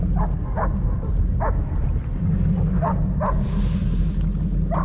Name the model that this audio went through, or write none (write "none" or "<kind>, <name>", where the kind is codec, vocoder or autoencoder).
none